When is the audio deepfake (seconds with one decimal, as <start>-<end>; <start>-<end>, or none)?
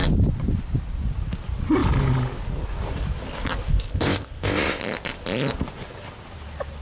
3.7-4.8